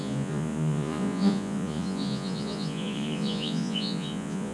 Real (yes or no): no